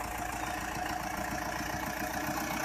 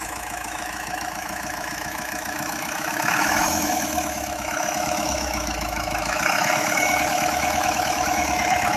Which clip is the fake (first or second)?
second